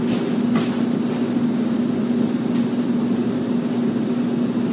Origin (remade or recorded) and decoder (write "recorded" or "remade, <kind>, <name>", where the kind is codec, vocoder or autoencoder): recorded